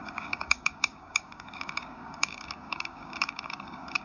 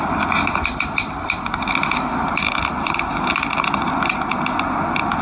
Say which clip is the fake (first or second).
first